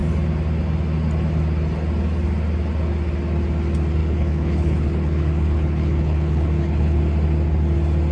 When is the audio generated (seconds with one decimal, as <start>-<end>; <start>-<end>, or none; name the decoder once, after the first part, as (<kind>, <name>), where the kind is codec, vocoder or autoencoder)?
4.0-7.0 (codec, HILCodec)